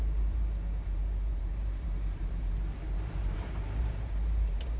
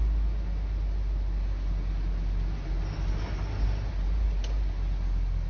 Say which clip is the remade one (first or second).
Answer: first